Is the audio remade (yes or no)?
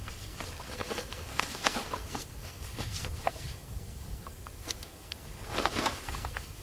yes